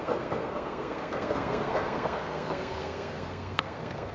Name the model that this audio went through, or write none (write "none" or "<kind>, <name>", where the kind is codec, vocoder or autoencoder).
codec, SNAC